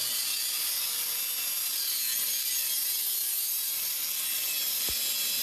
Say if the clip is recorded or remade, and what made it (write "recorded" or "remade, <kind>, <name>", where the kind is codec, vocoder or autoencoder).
recorded